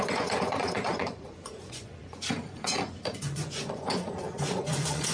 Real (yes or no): no